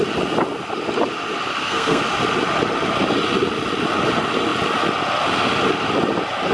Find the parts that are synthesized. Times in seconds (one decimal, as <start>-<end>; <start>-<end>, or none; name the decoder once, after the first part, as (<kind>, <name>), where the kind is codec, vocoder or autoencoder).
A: 1.5-2.0 (codec, SNAC)